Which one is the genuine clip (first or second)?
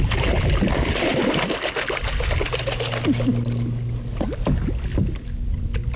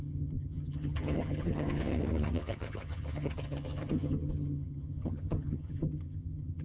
first